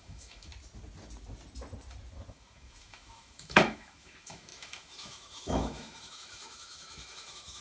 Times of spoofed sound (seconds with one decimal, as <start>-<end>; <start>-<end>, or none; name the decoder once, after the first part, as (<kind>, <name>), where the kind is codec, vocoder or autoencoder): 0.0-0.5 (autoencoder, DAC-VAE); 2.3-7.6